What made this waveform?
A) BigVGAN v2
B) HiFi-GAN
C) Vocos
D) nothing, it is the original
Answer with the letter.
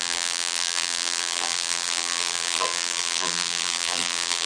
A